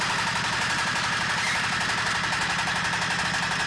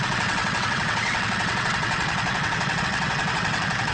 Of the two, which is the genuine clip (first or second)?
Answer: first